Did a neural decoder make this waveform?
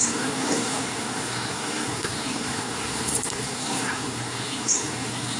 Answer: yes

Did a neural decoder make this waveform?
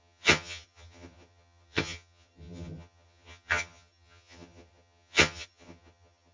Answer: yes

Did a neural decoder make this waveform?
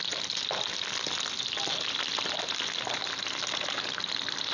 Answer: no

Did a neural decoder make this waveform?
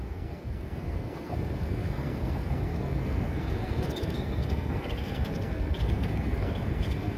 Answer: yes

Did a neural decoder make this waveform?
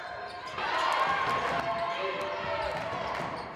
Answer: no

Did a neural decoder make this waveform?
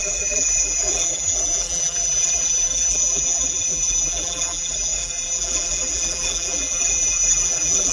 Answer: yes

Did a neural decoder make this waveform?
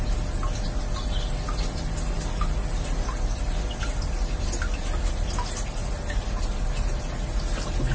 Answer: no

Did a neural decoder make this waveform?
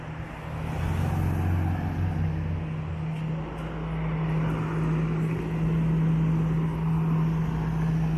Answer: no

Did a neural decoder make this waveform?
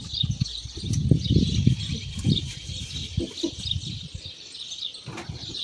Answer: no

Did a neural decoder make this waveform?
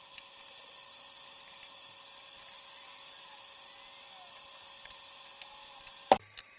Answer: no